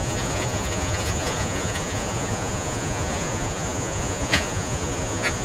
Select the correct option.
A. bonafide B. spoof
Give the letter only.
B